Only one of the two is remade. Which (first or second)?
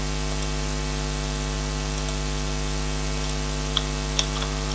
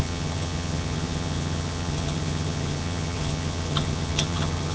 second